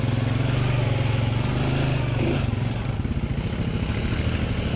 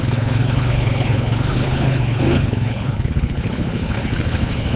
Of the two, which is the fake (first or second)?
second